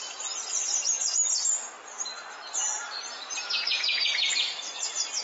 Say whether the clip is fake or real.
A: real